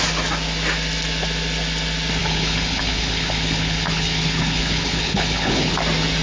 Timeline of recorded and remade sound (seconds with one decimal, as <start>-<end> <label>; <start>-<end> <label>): 0.0-2.2 recorded; 2.2-5.7 remade; 5.7-6.2 recorded

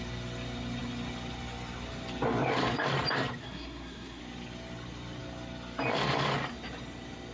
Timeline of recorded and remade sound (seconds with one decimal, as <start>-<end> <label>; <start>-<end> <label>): 0.0-3.4 recorded; 3.4-4.2 remade; 4.2-7.3 recorded